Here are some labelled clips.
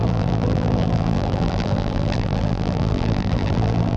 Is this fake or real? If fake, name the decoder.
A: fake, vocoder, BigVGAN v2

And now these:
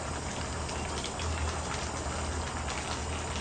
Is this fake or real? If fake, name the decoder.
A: real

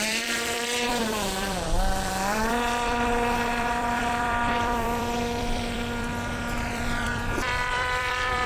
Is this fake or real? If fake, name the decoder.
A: fake, vocoder, BigVGAN v2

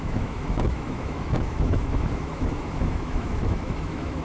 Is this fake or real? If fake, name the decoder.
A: fake, autoencoder, DAC-VAE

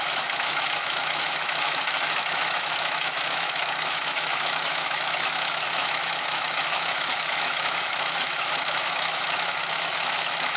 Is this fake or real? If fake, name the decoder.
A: fake, autoencoder, DAC-VAE